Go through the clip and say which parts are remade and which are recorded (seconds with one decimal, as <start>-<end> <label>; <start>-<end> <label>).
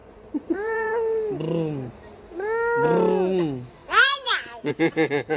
0.0-0.9 remade; 0.9-3.8 recorded; 3.8-4.7 remade; 4.7-5.4 recorded